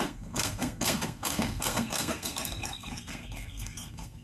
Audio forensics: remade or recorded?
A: remade